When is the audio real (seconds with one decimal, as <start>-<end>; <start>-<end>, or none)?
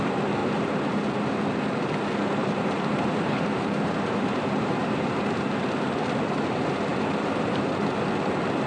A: 0.0-0.4; 1.4-2.4; 5.6-6.9; 7.8-8.7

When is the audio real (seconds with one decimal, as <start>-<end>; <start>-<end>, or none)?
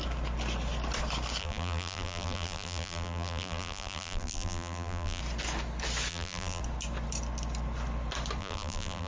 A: 0.0-1.4; 5.2-6.1; 6.6-8.4